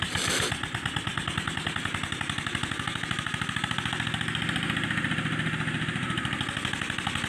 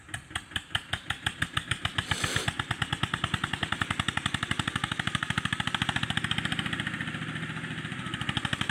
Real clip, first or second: first